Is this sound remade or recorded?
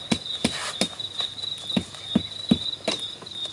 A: recorded